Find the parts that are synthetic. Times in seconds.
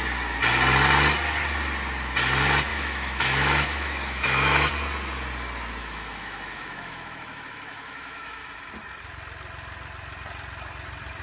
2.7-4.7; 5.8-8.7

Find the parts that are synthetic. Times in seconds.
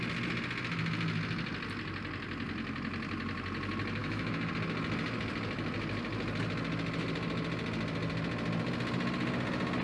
4.0-4.5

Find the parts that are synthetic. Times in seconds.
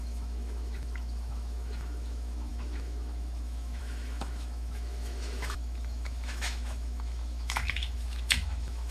0.0-8.9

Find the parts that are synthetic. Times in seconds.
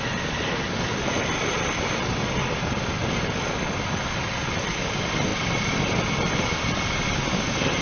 none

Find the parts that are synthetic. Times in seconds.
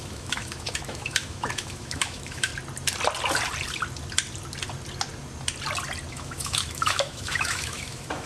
0.0-2.5; 6.1-8.3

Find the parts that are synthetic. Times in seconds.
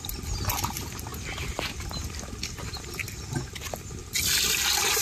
none